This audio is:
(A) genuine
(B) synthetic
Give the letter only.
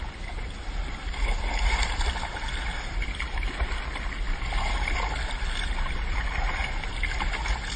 A